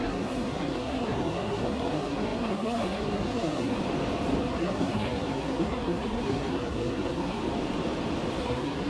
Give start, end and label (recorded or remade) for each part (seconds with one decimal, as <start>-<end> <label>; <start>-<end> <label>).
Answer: 0.0-3.8 remade; 3.8-4.4 recorded; 4.4-7.4 remade; 7.4-8.4 recorded; 8.4-8.9 remade